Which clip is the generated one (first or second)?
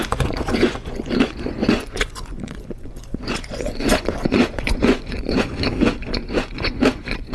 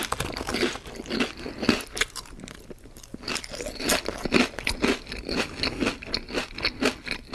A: first